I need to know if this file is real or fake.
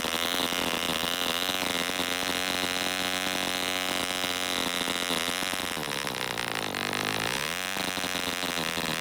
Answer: real